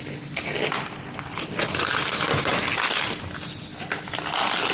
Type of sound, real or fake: fake